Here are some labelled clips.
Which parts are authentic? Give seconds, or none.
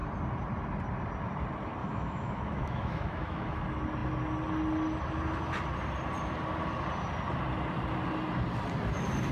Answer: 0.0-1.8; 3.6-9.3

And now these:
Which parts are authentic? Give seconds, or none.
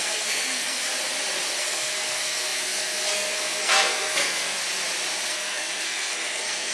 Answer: 0.9-1.6; 4.6-5.3